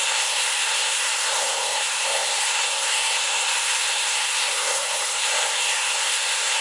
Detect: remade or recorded remade